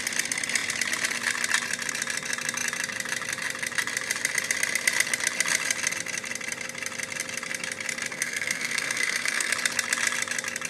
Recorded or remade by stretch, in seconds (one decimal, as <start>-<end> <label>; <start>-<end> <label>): 0.0-8.1 recorded; 8.1-9.5 remade; 9.5-10.7 recorded